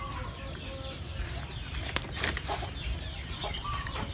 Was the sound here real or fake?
real